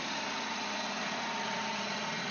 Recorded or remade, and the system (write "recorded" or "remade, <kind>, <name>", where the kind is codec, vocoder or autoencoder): remade, vocoder, Vocos